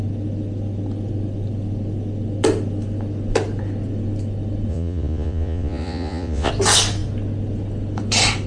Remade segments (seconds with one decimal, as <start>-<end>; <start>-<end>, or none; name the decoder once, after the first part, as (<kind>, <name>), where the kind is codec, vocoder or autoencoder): 4.7-6.5 (vocoder, Vocos)